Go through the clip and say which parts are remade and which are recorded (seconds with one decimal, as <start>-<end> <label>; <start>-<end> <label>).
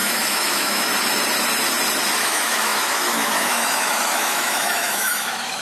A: 0.0-0.9 remade; 0.9-2.2 recorded; 2.2-5.6 remade